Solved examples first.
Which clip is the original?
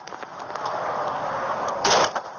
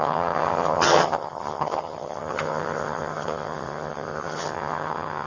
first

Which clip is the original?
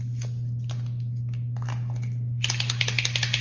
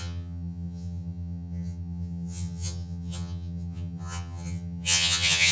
first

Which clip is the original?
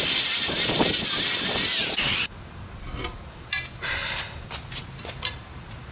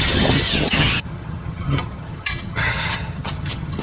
first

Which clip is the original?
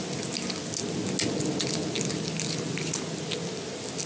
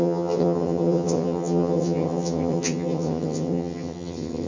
first